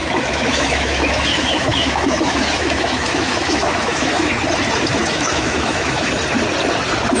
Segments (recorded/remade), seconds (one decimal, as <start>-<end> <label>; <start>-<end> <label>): 0.0-4.3 remade; 4.3-5.0 recorded; 5.0-6.1 remade; 6.1-7.2 recorded